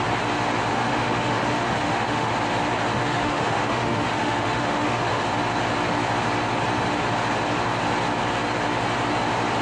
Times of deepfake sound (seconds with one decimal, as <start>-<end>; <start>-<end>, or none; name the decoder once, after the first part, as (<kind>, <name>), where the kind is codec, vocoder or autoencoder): 0.7-2.3 (autoencoder, DAC-VAE); 3.0-5.2